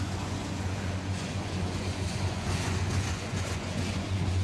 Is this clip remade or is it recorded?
remade